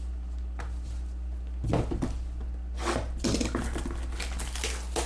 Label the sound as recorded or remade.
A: recorded